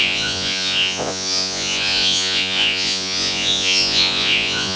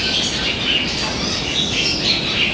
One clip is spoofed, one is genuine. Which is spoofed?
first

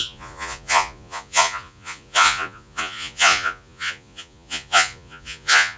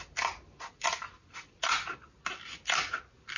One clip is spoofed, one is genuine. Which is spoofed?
first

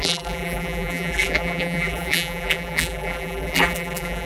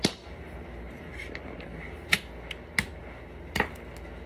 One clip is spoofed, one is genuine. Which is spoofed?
first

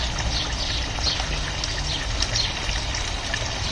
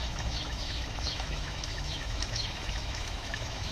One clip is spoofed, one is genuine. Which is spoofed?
second